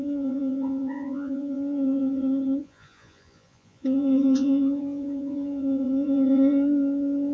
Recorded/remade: remade